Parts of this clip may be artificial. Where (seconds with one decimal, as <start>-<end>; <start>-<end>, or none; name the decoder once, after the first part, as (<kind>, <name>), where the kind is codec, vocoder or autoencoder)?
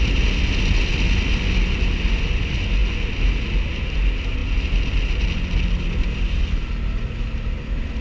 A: 4.4-4.9 (vocoder, BigVGAN v2)